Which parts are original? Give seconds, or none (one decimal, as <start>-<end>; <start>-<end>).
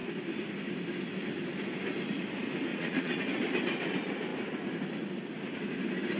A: 0.0-2.7; 3.2-6.2